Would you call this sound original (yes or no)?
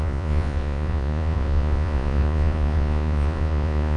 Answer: no